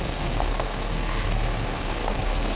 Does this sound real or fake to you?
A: fake